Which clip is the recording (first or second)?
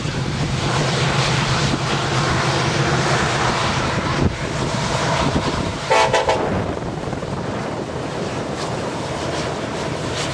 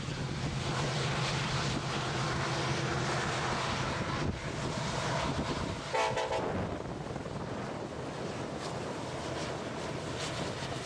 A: second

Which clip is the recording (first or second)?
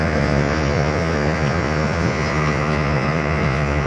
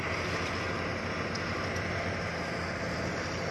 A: second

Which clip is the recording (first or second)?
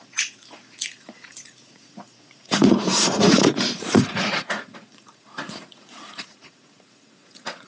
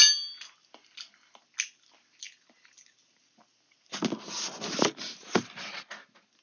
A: second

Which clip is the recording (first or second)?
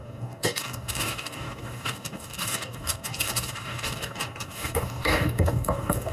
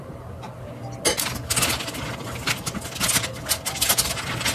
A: second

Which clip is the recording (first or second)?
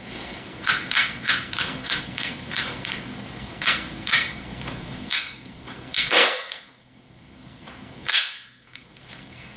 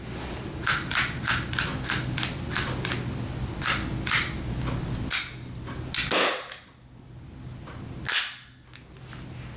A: second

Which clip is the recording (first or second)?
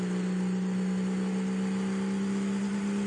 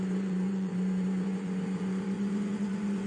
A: first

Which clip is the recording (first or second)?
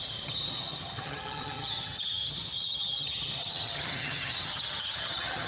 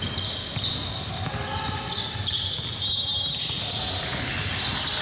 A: second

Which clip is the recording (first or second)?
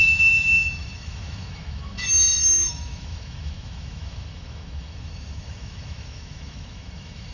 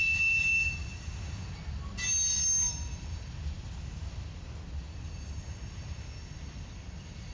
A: second